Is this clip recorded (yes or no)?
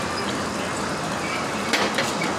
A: yes